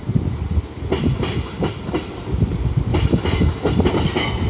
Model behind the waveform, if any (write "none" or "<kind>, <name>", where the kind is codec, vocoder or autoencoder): none